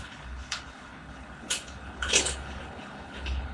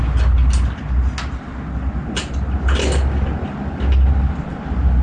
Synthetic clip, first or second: first